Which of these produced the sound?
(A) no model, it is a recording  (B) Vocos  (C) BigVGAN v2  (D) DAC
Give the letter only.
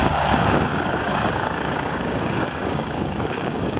D